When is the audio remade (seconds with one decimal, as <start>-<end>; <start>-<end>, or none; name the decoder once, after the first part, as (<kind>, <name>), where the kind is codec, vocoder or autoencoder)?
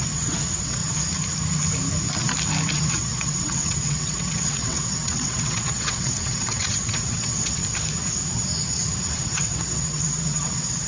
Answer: 0.0-0.8 (vocoder, WaveNeXt); 2.7-7.6; 9.1-10.9